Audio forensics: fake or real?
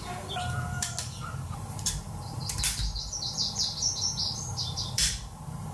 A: fake